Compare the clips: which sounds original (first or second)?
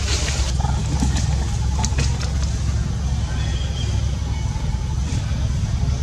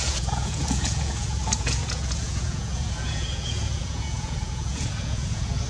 first